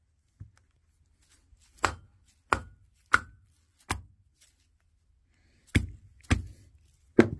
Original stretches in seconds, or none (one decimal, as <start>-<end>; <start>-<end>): 0.0-7.4